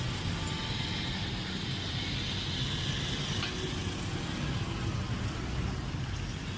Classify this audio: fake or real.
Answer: real